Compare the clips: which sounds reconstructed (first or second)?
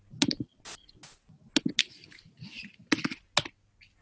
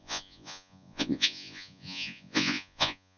second